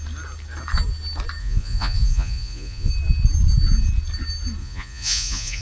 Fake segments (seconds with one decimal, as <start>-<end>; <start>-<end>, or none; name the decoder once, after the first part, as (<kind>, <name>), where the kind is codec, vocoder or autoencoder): 1.4-2.9 (vocoder, Vocos); 4.6-5.6